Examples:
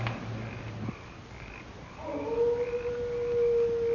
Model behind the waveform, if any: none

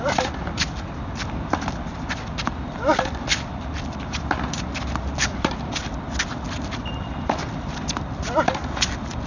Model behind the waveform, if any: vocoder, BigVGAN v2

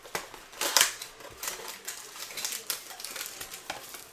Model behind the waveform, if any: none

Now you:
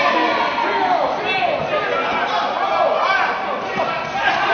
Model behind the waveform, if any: none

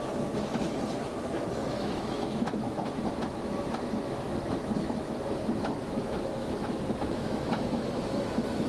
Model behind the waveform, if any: autoencoder, DAC-VAE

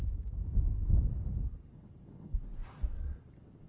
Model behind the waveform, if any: none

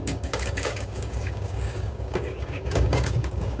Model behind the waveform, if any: codec, DAC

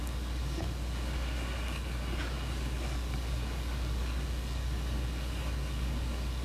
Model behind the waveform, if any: codec, DAC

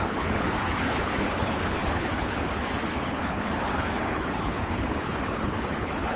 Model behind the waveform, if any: codec, HILCodec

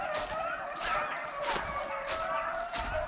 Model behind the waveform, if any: none